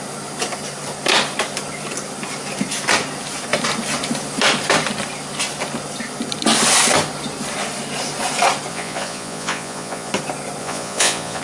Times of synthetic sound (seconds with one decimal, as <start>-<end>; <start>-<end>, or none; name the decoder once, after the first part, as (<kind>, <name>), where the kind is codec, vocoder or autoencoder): 8.7-10.1 (vocoder, Vocos); 10.6-11.4